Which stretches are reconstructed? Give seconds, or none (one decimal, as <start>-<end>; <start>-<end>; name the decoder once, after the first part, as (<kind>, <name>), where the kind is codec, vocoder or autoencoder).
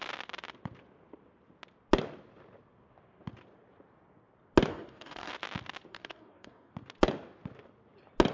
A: 4.7-5.3 (codec, DAC); 5.9-6.7